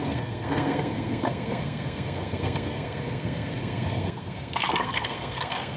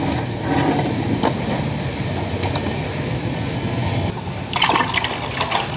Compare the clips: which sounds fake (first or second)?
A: first